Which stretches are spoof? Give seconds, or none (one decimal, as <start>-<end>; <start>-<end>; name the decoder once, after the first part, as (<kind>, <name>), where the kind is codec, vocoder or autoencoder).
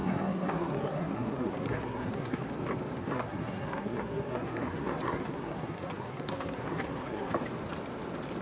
0.0-2.5 (codec, SNAC); 3.0-7.4